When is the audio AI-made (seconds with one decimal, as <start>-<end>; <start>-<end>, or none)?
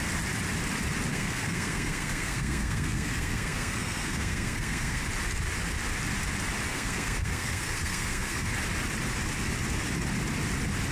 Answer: 1.1-5.0; 6.7-8.5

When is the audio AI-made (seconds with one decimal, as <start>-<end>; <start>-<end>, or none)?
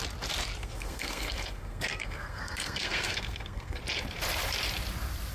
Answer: 0.6-3.8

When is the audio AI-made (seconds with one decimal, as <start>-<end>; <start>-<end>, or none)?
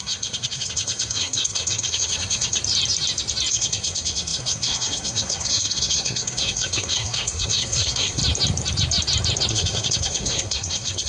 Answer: 0.0-2.6; 3.5-8.2; 9.5-11.1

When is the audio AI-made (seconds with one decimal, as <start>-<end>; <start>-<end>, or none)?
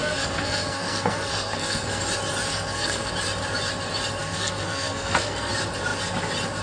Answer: 0.0-2.0; 2.5-3.1; 4.2-5.5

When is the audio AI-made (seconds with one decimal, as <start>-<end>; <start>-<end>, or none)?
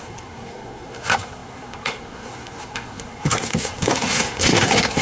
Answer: 0.0-5.0